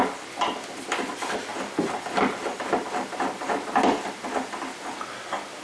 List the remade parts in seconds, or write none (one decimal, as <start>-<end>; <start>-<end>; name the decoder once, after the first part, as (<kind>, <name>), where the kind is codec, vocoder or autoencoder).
none